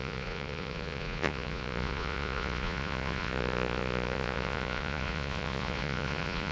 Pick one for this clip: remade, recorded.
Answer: remade